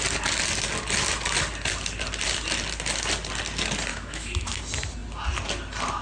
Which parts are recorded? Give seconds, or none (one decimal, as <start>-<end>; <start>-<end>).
0.0-3.9; 4.6-6.0